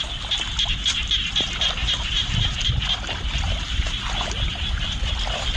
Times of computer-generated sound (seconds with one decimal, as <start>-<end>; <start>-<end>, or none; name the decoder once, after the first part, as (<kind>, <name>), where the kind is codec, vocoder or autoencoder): 1.8-2.6 (vocoder, BigVGAN v2)